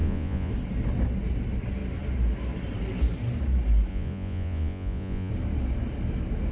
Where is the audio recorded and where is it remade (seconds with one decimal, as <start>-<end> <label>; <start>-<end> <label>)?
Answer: 0.0-0.5 remade; 0.5-3.9 recorded; 3.9-5.3 remade; 5.3-6.5 recorded